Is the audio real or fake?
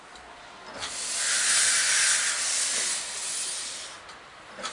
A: real